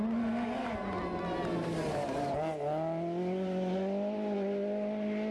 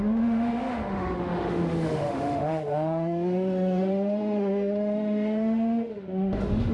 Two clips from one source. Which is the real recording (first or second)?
first